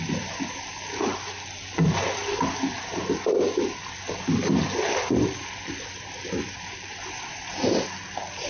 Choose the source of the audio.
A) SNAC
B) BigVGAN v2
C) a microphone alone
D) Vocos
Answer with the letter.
C